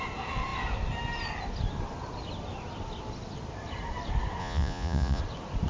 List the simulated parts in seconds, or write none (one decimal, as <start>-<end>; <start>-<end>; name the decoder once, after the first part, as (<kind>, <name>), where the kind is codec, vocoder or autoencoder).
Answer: 4.4-5.2 (vocoder, Vocos)